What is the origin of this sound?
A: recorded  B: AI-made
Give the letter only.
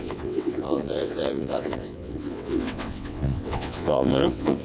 B